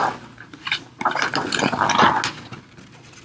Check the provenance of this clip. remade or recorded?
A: recorded